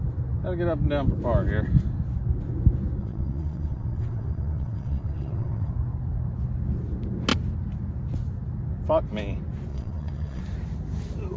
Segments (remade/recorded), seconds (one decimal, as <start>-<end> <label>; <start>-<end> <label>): 0.0-3.0 recorded; 3.0-5.7 remade; 5.7-9.7 recorded; 9.7-10.4 remade; 10.4-11.4 recorded